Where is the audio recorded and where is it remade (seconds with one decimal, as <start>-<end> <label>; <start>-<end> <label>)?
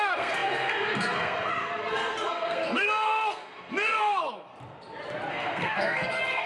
0.0-4.5 remade; 4.5-5.3 recorded; 5.3-6.5 remade